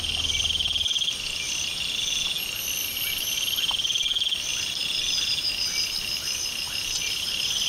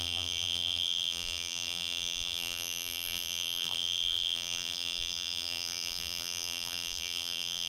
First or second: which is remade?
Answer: second